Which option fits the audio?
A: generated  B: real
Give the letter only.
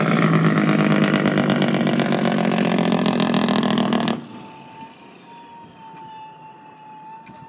B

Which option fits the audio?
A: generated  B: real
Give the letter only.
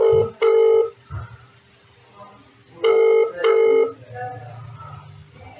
B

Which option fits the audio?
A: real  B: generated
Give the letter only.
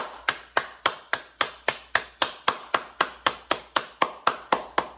A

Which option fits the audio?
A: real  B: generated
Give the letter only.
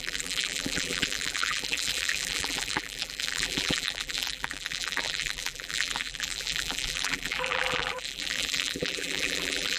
B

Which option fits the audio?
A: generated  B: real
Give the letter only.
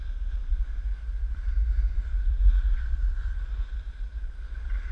B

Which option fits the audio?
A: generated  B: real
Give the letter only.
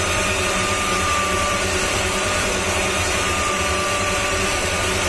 A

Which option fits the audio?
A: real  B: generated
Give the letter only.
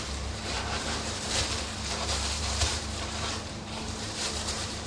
B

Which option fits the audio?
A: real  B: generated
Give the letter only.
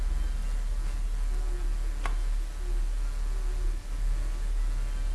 A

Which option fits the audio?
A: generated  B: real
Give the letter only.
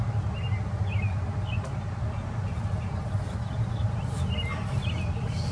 B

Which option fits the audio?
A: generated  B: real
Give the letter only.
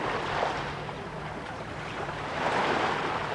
A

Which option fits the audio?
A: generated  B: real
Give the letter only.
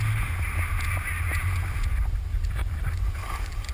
B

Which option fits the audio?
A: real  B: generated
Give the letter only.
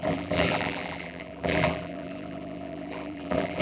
B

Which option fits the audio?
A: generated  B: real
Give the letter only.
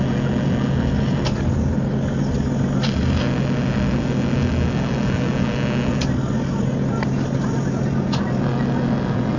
B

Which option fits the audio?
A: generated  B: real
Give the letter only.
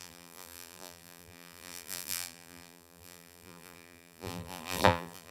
A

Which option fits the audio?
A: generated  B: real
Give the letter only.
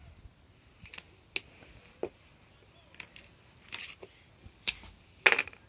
B